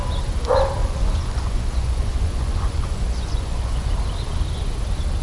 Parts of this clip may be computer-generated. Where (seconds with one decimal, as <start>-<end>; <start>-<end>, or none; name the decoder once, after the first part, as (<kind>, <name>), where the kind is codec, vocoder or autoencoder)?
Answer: 0.8-3.9 (vocoder, Vocos)

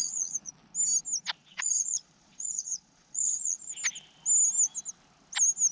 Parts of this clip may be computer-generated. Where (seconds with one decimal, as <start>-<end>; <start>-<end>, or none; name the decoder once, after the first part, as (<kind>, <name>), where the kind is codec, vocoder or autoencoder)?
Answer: 0.0-0.5 (vocoder, Vocos); 1.4-3.7

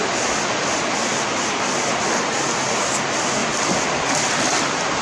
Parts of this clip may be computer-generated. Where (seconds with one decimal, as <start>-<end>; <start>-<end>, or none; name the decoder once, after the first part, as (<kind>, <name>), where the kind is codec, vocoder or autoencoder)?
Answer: 3.4-4.1 (vocoder, BigVGAN v2)

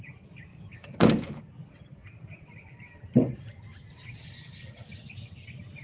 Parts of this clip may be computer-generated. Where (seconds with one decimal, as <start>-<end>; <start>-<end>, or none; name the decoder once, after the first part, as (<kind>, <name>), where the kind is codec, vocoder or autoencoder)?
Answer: 0.5-1.4 (codec, DAC)

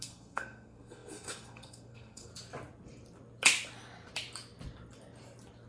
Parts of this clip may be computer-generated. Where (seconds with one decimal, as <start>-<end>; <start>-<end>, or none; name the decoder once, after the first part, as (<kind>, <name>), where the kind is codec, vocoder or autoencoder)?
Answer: 0.0-2.3 (codec, SNAC)

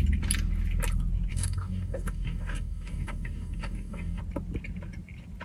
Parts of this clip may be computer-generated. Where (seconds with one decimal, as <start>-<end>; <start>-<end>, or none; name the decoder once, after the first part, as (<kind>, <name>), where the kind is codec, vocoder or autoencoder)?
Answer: 1.3-4.2 (codec, DAC)

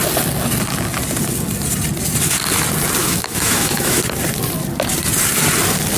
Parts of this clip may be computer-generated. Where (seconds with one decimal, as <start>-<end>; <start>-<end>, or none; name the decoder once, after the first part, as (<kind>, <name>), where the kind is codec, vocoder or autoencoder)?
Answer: 3.0-4.0 (autoencoder, DAC-VAE)